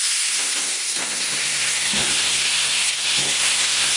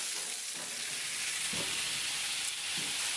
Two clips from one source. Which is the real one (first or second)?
second